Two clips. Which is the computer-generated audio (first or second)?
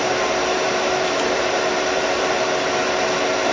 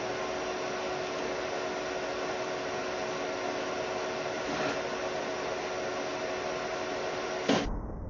first